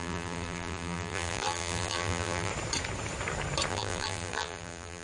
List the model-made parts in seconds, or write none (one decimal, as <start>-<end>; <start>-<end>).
0.0-2.5; 3.7-5.0

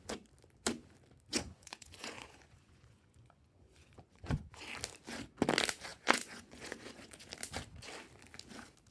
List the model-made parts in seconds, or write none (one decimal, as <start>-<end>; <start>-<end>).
1.3-4.6; 5.9-7.3